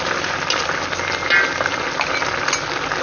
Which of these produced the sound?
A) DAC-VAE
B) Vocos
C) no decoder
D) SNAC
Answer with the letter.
C